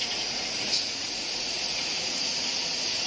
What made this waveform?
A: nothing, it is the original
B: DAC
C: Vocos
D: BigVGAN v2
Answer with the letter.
C